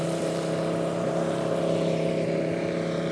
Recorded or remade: remade